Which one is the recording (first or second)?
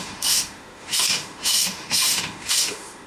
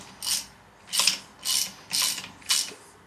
second